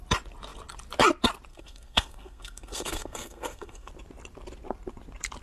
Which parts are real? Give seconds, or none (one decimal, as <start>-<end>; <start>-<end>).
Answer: 0.0-1.5; 3.9-5.4